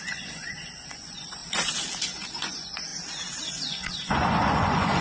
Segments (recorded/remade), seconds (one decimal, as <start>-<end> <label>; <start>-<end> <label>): 0.0-1.4 remade; 1.4-2.0 recorded; 2.0-2.9 remade; 2.9-3.5 recorded; 3.5-5.0 remade